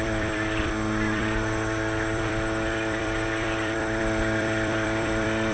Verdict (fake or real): fake